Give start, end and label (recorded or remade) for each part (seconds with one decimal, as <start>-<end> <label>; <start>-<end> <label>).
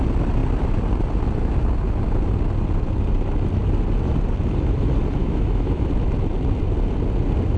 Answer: 0.0-5.2 recorded; 5.2-5.9 remade; 5.9-7.6 recorded